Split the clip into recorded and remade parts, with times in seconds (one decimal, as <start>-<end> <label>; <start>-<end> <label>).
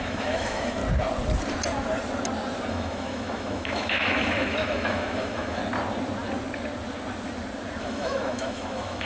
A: 0.0-0.8 remade; 0.8-2.7 recorded; 2.7-5.6 remade; 5.6-7.8 recorded; 7.8-9.1 remade